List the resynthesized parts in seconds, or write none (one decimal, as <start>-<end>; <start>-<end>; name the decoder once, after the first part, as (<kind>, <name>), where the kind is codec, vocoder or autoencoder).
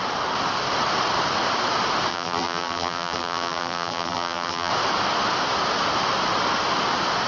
2.1-4.7 (vocoder, BigVGAN v2)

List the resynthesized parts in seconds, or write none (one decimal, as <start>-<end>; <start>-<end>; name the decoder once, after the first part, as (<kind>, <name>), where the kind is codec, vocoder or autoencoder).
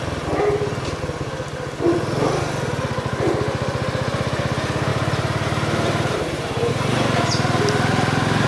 4.9-6.7 (vocoder, BigVGAN v2)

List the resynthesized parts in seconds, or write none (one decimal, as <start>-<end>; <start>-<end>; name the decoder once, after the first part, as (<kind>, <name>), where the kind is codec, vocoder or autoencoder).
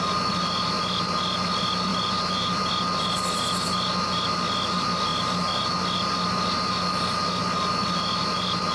1.9-2.7 (vocoder, BigVGAN v2)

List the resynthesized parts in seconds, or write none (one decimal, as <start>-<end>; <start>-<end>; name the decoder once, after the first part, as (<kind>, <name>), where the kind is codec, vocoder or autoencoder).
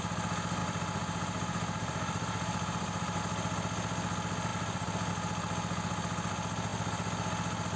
0.6-3.2 (vocoder, BigVGAN v2); 4.5-5.1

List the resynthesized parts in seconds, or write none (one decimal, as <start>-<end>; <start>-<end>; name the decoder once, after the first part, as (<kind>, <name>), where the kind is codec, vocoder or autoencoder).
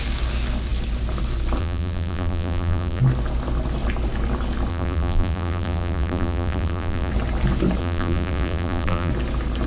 1.6-3.0 (vocoder, BigVGAN v2); 4.7-7.1; 7.8-9.1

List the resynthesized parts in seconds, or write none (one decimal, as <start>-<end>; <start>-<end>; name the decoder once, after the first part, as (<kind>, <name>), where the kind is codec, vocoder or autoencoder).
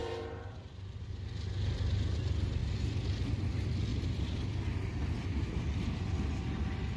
0.0-1.1 (vocoder, BigVGAN v2)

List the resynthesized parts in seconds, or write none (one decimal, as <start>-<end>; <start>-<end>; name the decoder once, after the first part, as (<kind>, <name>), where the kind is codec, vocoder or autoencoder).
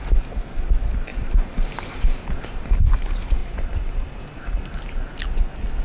1.1-2.8 (vocoder, BigVGAN v2); 3.4-4.6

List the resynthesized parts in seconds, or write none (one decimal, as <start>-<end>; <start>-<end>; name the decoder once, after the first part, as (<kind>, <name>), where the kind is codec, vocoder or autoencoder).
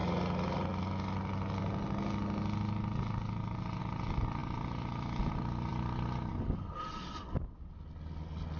none